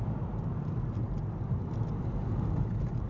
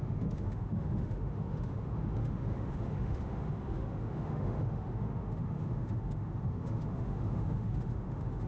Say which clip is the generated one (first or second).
second